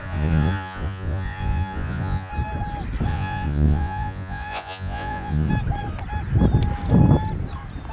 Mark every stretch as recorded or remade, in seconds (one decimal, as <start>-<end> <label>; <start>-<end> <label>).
0.0-2.3 remade; 2.3-3.1 recorded; 3.1-5.5 remade; 5.5-7.9 recorded